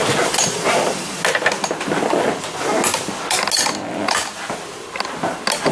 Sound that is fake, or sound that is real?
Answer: real